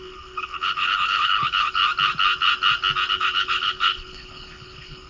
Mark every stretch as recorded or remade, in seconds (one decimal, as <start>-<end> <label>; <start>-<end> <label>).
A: 0.0-1.8 remade; 1.8-3.1 recorded; 3.1-5.1 remade